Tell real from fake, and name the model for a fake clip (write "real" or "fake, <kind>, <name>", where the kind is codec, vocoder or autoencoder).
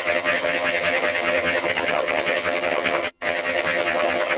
fake, vocoder, HiFi-GAN